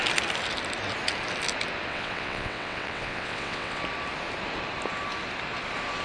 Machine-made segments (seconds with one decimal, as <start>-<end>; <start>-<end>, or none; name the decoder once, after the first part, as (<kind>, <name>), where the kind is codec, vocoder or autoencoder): 1.9-3.8 (vocoder, WaveNeXt)